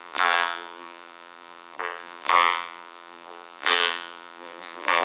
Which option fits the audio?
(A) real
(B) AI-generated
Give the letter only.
B